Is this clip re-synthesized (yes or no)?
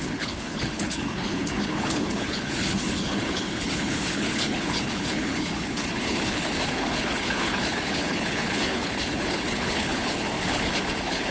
yes